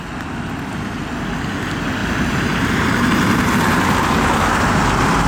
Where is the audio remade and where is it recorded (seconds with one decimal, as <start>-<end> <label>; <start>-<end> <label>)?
0.0-2.0 recorded; 2.0-5.3 remade